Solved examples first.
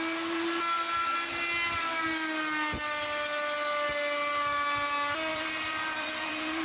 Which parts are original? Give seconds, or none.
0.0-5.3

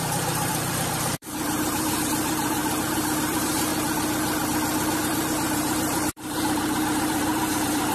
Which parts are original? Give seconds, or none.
2.6-3.2; 3.7-5.0

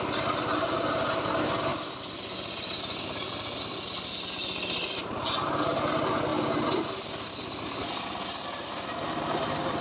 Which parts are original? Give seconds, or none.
0.0-1.7; 3.3-9.8

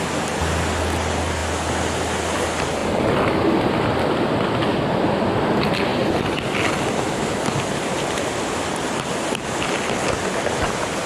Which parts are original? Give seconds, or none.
0.0-11.1